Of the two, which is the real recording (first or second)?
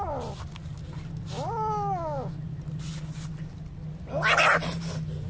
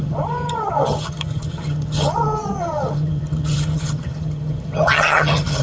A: first